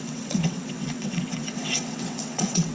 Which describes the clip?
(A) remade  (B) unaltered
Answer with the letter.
A